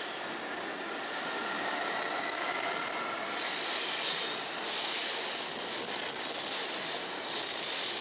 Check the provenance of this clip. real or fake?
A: real